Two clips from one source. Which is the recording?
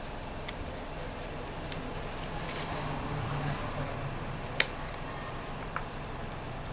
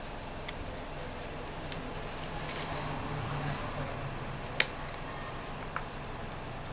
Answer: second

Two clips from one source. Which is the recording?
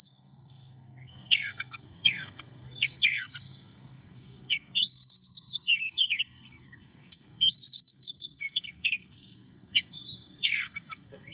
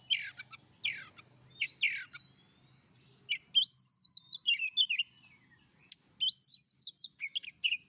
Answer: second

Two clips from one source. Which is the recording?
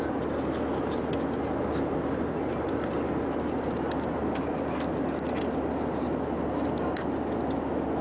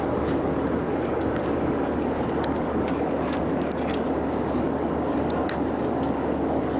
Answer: first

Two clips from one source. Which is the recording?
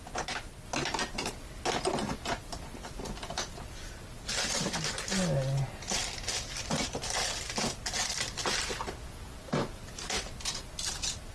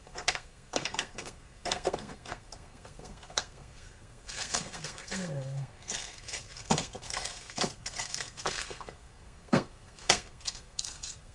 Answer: first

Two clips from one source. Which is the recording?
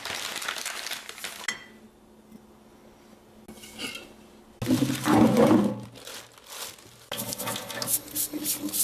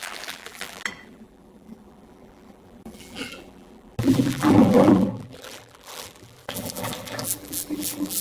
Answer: first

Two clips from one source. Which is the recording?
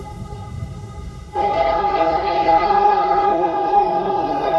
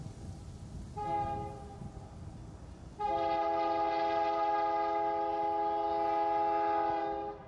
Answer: second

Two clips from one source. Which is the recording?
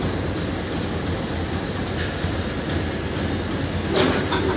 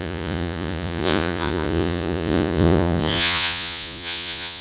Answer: first